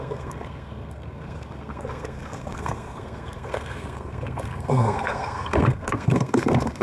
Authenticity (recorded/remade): remade